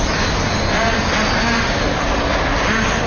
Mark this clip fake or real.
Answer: real